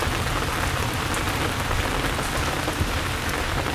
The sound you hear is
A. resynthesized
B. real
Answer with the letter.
B